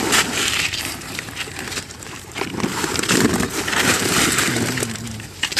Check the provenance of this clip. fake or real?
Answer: fake